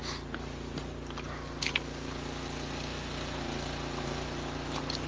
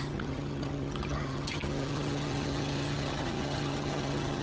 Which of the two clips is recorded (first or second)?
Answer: first